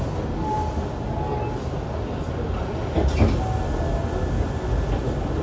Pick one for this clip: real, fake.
real